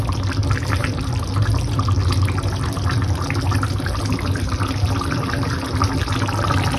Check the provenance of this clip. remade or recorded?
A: recorded